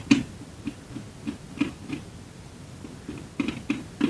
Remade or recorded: recorded